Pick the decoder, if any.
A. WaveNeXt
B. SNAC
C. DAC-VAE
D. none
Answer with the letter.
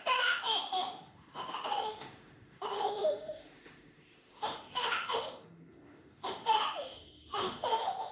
C